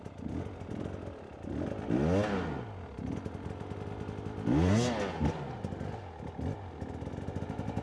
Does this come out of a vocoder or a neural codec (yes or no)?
no